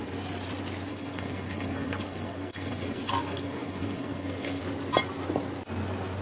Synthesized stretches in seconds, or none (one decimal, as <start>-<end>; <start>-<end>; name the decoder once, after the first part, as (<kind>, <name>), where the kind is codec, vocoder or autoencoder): 0.9-4.6 (codec, SNAC)